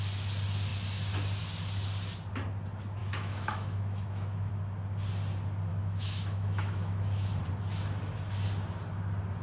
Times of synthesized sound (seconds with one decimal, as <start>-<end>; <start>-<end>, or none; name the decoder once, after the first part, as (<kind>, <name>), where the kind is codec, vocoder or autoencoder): 3.0-4.5 (autoencoder, DAC-VAE); 5.7-7.4